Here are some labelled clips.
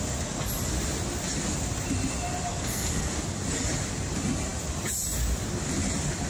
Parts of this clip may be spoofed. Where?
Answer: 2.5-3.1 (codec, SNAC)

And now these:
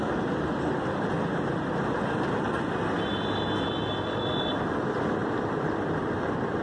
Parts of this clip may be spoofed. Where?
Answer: none

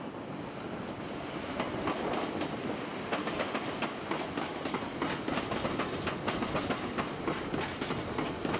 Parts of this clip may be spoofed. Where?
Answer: none

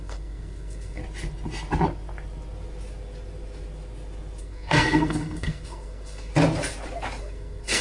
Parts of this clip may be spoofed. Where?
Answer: 0.0-1.0 (codec, SNAC); 4.4-6.3; 7.2-7.8